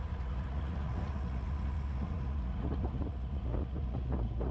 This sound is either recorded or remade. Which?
remade